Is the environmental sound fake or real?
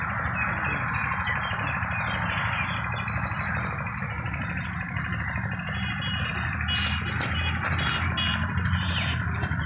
real